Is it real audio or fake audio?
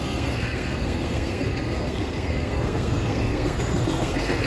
fake